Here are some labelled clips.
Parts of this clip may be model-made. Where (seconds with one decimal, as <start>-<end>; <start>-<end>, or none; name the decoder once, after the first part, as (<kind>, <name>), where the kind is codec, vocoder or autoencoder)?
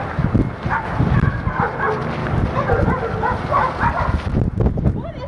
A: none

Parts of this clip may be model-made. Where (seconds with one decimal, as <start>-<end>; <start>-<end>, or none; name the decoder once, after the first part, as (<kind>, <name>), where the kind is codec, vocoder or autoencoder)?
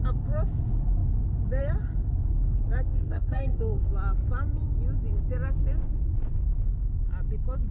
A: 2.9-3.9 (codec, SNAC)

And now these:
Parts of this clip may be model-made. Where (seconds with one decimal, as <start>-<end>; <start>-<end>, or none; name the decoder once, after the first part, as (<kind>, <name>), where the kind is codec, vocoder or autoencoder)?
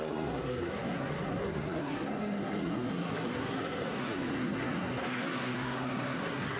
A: 0.0-6.6 (codec, SNAC)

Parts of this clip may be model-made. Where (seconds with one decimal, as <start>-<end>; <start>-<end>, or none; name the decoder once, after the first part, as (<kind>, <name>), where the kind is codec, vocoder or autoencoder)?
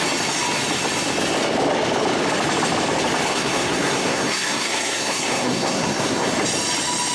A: 3.3-6.3 (codec, SNAC)